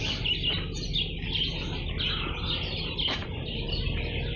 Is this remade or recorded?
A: recorded